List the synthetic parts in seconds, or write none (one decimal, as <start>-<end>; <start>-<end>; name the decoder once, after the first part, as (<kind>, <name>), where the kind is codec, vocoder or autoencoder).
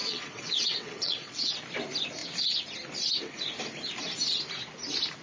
0.0-1.5 (vocoder, WaveNeXt)